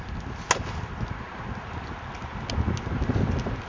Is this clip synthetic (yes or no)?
no